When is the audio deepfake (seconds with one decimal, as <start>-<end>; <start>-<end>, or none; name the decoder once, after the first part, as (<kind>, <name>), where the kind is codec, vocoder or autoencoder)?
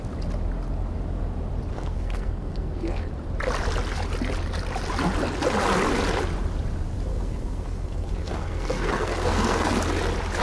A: 1.7-3.1 (codec, SNAC); 7.1-9.7